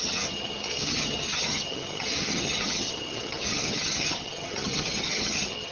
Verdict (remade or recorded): remade